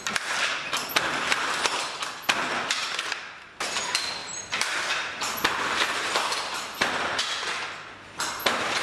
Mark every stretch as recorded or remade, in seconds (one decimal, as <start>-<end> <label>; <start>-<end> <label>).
0.0-4.2 recorded; 4.2-6.9 remade; 6.9-8.8 recorded